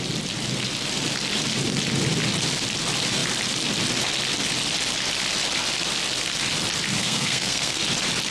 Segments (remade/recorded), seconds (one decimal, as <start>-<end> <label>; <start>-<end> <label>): 0.0-7.0 recorded; 7.0-7.8 remade; 7.8-8.3 recorded